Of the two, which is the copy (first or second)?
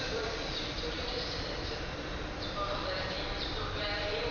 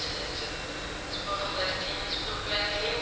first